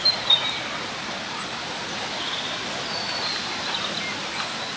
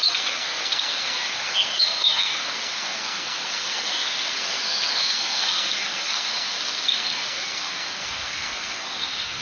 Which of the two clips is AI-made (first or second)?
second